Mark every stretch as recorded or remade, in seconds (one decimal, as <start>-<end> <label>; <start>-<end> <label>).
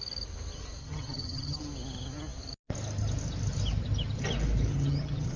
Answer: 0.0-0.8 recorded; 0.8-1.6 remade; 1.6-4.7 recorded; 4.7-5.4 remade